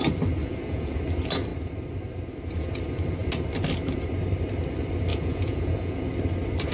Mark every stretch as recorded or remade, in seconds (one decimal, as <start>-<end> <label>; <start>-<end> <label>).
0.0-0.4 recorded; 0.4-1.0 remade; 1.0-5.1 recorded; 5.1-6.0 remade; 6.0-6.7 recorded